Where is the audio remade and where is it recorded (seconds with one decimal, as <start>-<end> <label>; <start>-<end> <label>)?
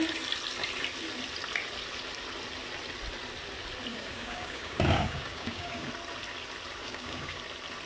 0.0-3.9 recorded; 3.9-5.9 remade; 5.9-6.8 recorded; 6.8-7.4 remade; 7.4-7.9 recorded